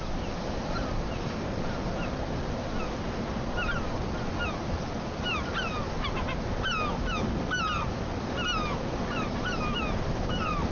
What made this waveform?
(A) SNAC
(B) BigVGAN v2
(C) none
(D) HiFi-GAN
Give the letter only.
C